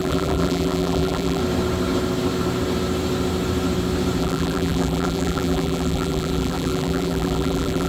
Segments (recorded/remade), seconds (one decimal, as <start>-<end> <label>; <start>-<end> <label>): 0.0-1.4 remade; 1.4-4.2 recorded; 4.2-7.9 remade